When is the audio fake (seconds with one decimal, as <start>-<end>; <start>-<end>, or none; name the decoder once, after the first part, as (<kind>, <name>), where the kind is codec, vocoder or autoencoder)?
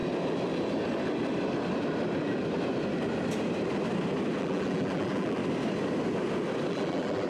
4.4-5.4 (vocoder, BigVGAN v2); 6.7-7.3